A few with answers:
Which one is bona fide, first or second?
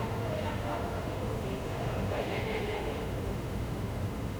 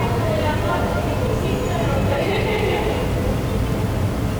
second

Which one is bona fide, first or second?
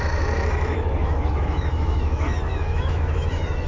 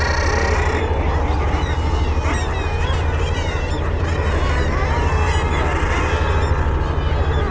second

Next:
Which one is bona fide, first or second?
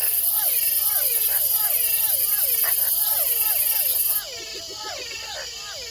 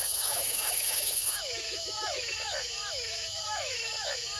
first